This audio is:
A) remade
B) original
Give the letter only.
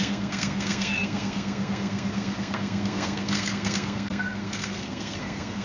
A